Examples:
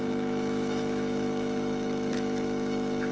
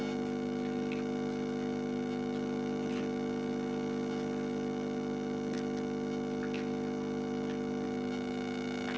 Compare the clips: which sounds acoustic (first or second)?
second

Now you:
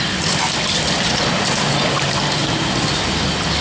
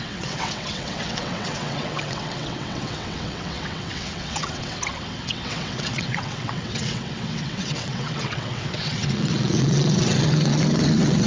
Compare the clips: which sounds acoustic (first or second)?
first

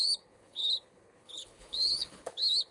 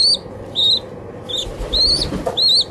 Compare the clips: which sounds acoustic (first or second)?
second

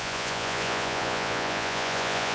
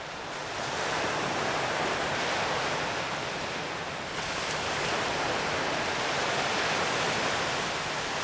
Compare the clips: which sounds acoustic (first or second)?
second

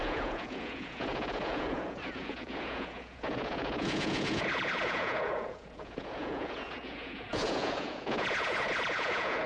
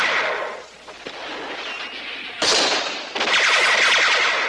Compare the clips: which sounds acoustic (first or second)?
second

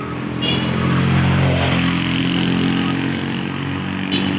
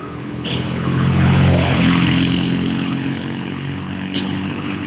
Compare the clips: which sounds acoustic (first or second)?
first